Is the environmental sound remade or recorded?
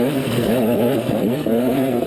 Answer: remade